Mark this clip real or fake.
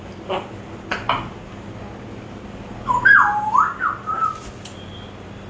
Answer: real